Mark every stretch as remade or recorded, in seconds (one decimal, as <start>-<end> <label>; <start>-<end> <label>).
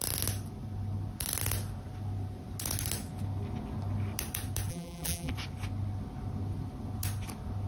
0.0-4.7 recorded; 4.7-5.3 remade; 5.3-7.7 recorded